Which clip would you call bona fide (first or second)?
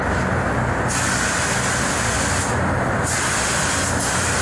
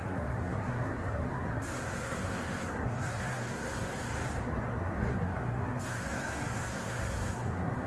first